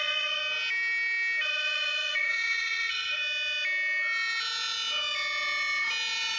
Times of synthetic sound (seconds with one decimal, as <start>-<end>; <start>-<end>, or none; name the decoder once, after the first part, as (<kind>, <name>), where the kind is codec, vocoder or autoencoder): 0.0-0.4 (vocoder, Vocos); 1.4-3.2

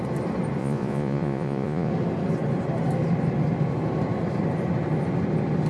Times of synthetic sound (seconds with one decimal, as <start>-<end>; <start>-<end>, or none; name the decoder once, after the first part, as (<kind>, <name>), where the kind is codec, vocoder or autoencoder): 0.6-1.9 (vocoder, Vocos)